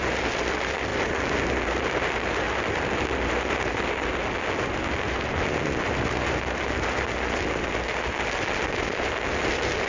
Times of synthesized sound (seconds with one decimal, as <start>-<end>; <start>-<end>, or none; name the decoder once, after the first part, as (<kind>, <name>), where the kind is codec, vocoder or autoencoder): none